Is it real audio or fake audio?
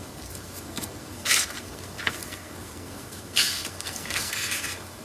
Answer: fake